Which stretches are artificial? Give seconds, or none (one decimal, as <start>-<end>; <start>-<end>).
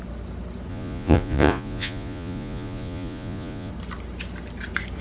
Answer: 0.7-3.7